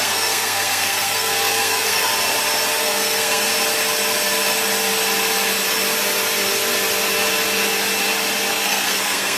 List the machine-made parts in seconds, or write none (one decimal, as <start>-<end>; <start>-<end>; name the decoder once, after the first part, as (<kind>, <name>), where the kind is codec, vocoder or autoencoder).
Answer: 0.0-2.1 (codec, SNAC); 2.8-3.5; 8.5-9.4